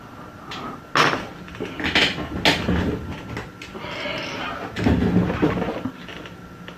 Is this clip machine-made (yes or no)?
no